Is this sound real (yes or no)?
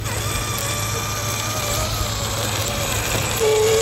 yes